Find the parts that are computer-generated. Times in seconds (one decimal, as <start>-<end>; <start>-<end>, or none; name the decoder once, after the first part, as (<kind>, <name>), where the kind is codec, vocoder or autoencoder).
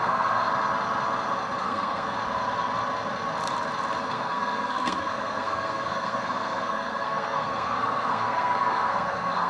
0.0-0.5 (codec, SNAC); 1.6-2.2; 4.0-9.5